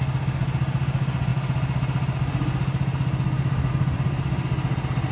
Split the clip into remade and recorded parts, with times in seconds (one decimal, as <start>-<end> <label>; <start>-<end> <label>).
0.0-5.1 recorded